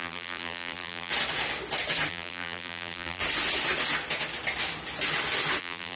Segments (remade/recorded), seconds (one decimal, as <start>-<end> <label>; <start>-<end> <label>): 0.0-1.1 remade; 1.1-2.1 recorded; 2.1-3.2 remade; 3.2-5.6 recorded; 5.6-6.0 remade